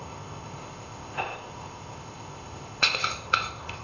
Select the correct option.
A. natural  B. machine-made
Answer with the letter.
B